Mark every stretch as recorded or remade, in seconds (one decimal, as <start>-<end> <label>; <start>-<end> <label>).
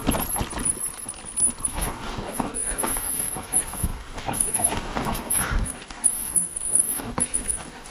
0.0-1.7 recorded; 1.7-7.9 remade